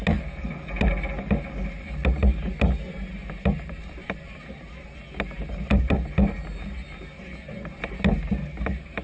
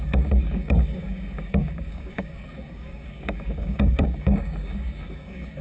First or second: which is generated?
second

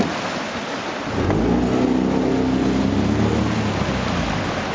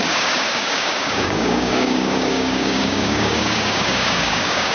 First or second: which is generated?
second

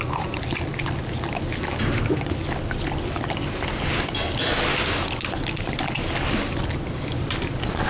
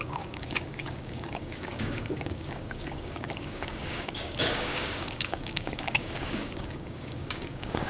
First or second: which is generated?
second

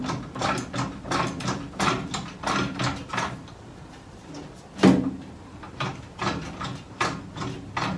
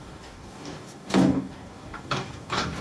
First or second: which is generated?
second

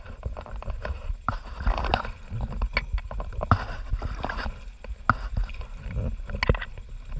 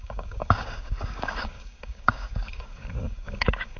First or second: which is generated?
second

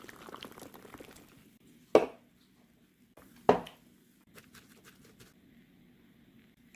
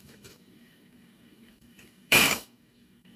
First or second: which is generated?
second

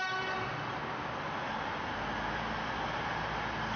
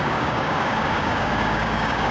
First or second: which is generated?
second